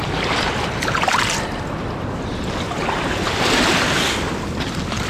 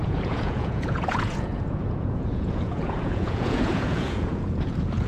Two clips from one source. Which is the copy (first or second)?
second